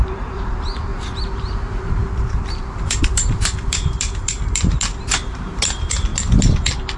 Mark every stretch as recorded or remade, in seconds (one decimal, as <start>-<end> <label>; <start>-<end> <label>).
0.0-6.1 remade; 6.1-7.0 recorded